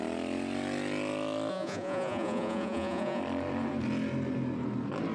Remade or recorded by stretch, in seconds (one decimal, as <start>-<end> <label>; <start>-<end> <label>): 0.0-1.5 recorded; 1.5-3.2 remade; 3.2-5.1 recorded